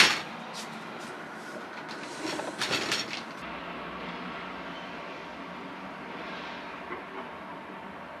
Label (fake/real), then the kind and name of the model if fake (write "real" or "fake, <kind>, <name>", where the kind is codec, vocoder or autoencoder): real